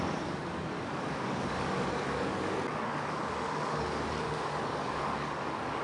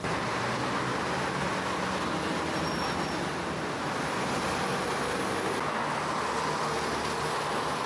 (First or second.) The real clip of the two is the second